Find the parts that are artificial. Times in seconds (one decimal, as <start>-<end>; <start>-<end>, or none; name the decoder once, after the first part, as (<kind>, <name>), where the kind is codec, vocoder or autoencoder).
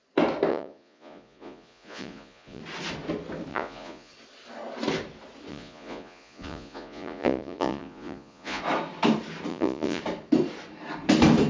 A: 0.5-2.6 (vocoder, Vocos); 3.5-4.1; 5.5-8.6; 9.5-10.0